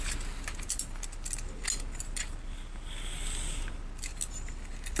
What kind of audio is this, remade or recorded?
recorded